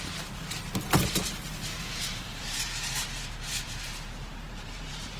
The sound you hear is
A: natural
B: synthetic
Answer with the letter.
B